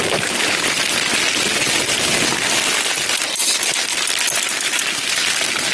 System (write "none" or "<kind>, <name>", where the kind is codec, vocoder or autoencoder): none